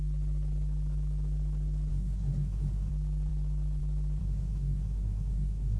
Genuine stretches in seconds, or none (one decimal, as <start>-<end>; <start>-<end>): 0.0-1.9; 2.9-4.2